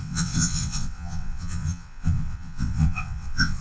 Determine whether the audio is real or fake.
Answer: fake